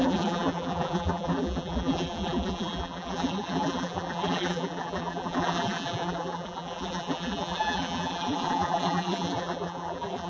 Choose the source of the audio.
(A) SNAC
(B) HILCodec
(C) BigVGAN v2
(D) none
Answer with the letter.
C